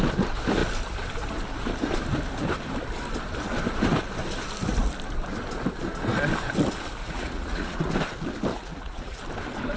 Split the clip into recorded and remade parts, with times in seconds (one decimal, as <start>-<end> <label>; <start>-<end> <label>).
0.0-7.0 recorded; 7.0-7.9 remade; 7.9-8.5 recorded; 8.5-9.2 remade; 9.2-9.8 recorded